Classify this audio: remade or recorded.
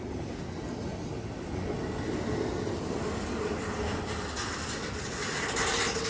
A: recorded